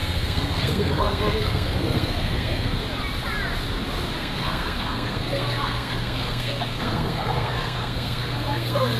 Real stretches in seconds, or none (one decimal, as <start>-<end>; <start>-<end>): 2.8-4.2